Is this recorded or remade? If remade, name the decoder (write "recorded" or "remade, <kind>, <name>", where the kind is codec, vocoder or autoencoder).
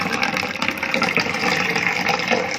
recorded